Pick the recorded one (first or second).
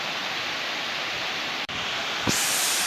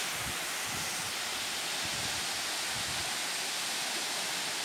second